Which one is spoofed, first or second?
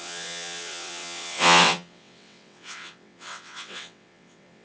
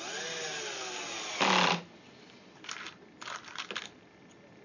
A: first